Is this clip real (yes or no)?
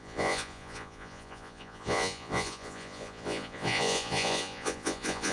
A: no